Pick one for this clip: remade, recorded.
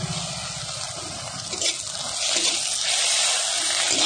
recorded